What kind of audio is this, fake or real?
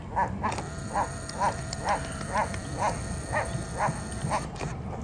real